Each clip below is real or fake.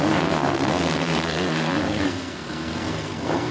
fake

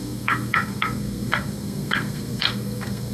fake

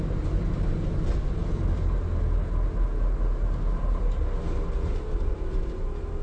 real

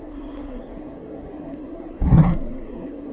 fake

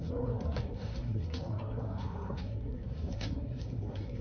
fake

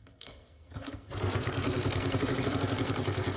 fake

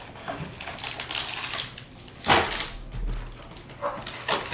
real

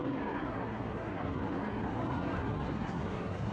fake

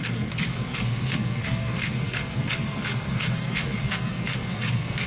fake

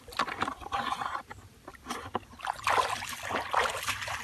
real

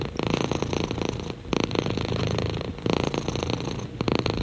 real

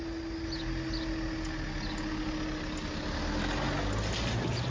real